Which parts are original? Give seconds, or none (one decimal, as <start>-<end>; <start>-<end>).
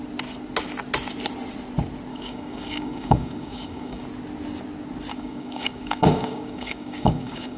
0.0-2.1; 4.0-5.1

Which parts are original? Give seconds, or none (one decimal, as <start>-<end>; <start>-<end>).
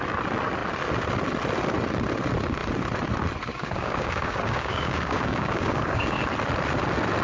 0.0-3.5; 6.2-7.2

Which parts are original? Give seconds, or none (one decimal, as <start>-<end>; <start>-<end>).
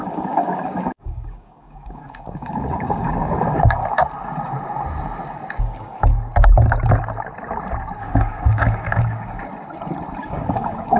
3.8-5.6; 6.3-8.0; 9.4-10.2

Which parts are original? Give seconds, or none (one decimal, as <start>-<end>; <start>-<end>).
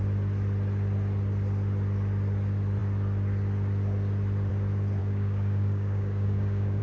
0.0-5.0